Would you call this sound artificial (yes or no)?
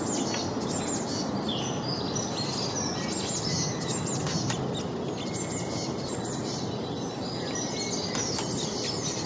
no